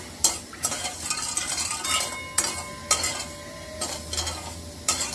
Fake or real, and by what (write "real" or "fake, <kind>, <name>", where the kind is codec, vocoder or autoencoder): real